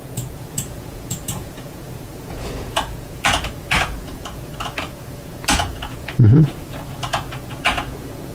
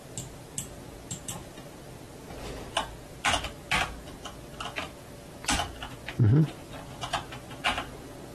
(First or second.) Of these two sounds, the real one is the second